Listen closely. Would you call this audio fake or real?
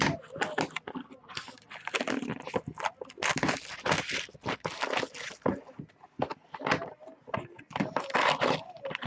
real